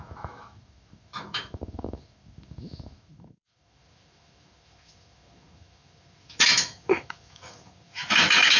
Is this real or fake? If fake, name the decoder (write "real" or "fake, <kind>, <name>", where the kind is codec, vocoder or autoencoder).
fake, autoencoder, DAC-VAE